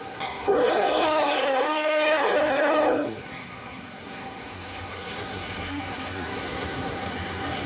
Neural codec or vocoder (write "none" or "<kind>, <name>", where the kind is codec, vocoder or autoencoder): codec, SNAC